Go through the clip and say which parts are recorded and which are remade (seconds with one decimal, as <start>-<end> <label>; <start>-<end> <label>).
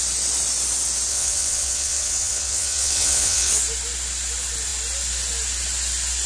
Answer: 0.0-1.1 recorded; 1.1-3.5 remade; 3.5-6.3 recorded